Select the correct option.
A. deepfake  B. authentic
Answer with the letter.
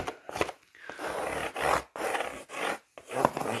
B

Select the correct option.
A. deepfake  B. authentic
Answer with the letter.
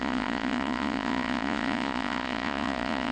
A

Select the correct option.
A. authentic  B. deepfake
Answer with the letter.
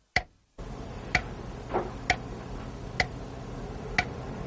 A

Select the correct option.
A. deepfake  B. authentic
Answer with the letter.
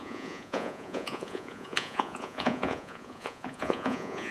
A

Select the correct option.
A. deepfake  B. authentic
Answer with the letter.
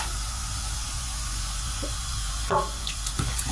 A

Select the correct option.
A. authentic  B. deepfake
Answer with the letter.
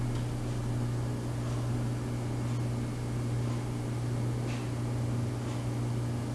A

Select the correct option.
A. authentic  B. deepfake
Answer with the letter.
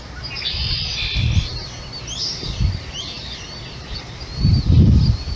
A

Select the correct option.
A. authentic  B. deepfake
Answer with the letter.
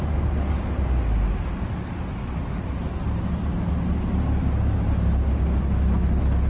A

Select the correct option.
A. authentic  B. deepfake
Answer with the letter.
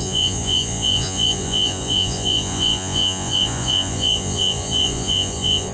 B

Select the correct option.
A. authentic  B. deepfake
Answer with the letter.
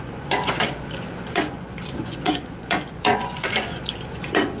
B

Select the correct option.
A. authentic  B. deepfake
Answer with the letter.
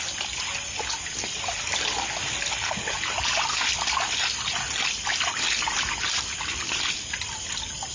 A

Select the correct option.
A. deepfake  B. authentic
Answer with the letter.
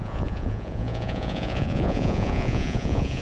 A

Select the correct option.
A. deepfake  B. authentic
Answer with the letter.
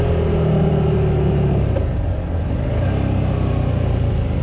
B